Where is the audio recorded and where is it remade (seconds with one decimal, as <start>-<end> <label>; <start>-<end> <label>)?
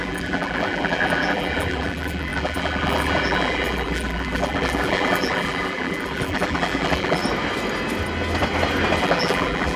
0.0-7.2 remade; 7.2-9.0 recorded; 9.0-9.8 remade